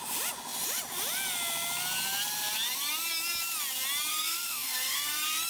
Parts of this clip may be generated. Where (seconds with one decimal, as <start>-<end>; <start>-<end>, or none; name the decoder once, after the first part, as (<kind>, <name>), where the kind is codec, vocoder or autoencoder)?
4.1-5.5 (codec, SNAC)